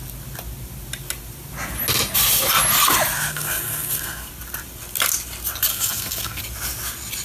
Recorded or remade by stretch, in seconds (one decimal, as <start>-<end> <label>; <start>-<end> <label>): 0.0-3.3 recorded; 3.3-4.3 remade; 4.3-5.7 recorded; 5.7-6.4 remade; 6.4-7.2 recorded

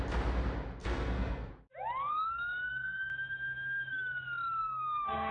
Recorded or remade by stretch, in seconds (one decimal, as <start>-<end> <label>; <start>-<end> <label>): 0.0-0.8 recorded; 0.8-1.5 remade; 1.5-2.1 recorded; 2.1-3.1 remade; 3.1-4.6 recorded; 4.6-5.3 remade

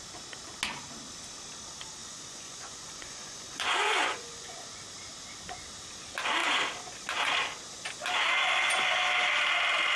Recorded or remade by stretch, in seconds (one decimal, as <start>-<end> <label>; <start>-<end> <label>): 0.0-2.0 recorded; 2.0-4.8 remade; 4.8-10.0 recorded

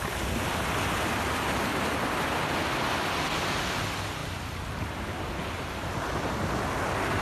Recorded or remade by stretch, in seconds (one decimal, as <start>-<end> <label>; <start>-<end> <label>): 0.0-7.2 recorded

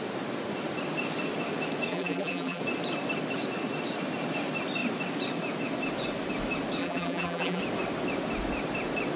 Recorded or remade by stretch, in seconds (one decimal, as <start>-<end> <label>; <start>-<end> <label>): 0.0-1.9 recorded; 1.9-2.6 remade; 2.6-6.8 recorded; 6.8-7.6 remade; 7.6-9.2 recorded

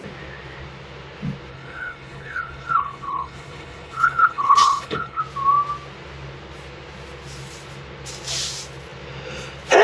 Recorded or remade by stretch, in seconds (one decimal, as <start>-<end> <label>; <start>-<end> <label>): 0.0-1.5 recorded; 1.5-5.2 remade; 5.2-9.8 recorded

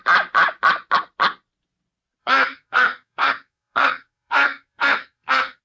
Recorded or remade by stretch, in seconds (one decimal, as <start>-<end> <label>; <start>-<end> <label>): 0.0-2.2 recorded; 2.2-5.6 remade

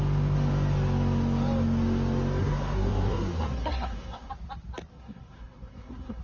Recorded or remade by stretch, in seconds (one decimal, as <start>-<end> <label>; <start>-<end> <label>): 0.0-2.4 recorded; 2.4-4.3 remade; 4.3-4.9 recorded; 4.9-6.2 remade